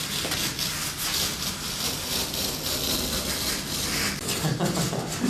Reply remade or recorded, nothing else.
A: recorded